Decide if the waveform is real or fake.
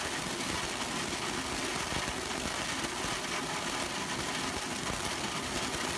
real